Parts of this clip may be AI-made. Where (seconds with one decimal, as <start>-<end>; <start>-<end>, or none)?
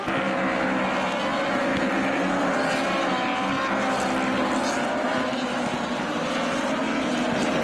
1.7-2.3; 5.1-6.8